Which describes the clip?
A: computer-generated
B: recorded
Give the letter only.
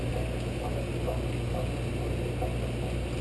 B